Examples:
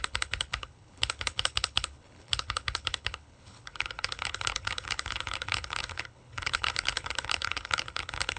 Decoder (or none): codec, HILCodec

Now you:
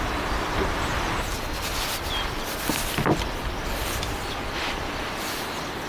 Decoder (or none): none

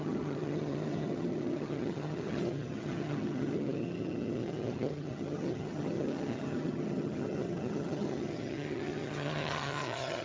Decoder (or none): vocoder, HiFi-GAN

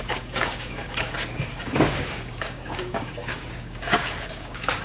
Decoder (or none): codec, DAC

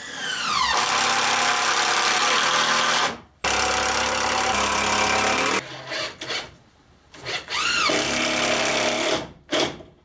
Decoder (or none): none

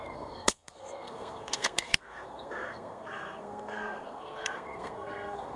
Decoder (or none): codec, SNAC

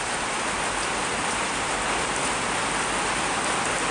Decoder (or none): none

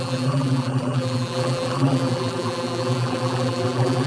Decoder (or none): vocoder, BigVGAN v2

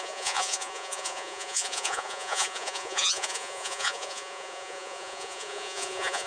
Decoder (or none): vocoder, Vocos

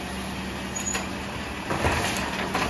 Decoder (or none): none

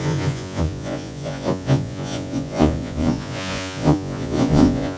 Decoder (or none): vocoder, Vocos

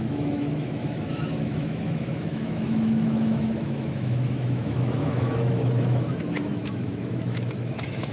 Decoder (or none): autoencoder, DAC-VAE